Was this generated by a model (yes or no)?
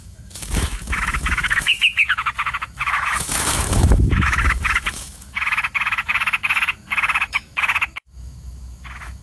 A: yes